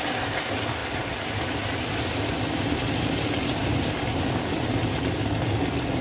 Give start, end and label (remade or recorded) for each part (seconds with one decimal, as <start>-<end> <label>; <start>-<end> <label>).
0.0-6.0 recorded